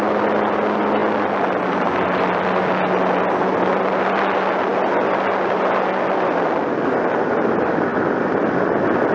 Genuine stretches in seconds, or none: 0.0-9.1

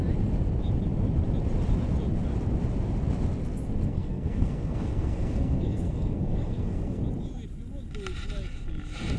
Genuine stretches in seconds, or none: 0.0-3.9; 7.0-9.2

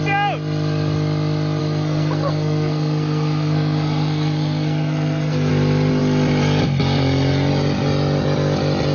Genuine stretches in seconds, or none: 0.0-1.6; 5.5-8.9

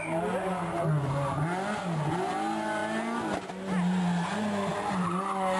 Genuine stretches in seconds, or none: 0.0-5.6

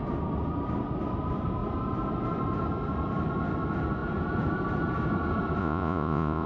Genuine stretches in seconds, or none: 0.0-5.6

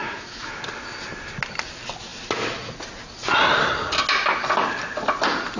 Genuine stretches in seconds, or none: 0.6-5.6

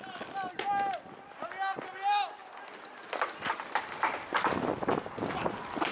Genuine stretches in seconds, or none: 0.0-5.9

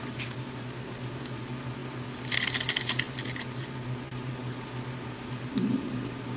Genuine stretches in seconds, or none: 0.0-6.4